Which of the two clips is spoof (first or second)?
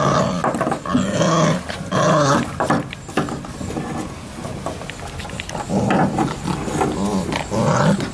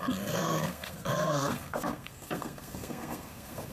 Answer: second